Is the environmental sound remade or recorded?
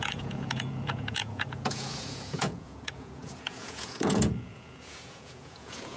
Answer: remade